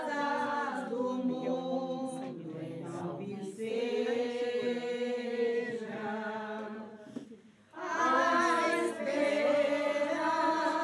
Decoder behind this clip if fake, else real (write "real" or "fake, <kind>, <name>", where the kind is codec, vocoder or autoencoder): real